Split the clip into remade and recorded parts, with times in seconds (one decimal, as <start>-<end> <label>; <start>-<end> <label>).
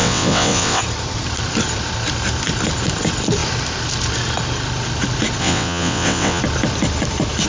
0.0-0.8 remade; 0.8-5.4 recorded; 5.4-6.4 remade; 6.4-7.5 recorded